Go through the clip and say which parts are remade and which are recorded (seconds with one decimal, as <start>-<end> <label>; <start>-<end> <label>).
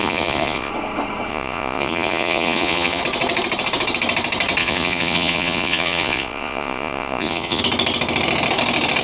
0.0-0.7 remade; 0.7-1.3 recorded; 1.3-3.0 remade; 3.0-4.6 recorded; 4.6-7.6 remade; 7.6-9.0 recorded